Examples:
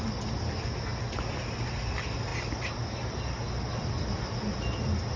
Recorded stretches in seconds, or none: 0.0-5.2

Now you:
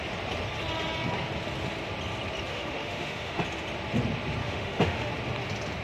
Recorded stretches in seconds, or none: 0.0-2.5; 3.4-4.4; 5.1-5.8

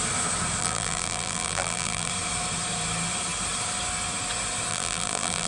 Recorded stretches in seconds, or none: 0.0-0.6; 2.1-4.7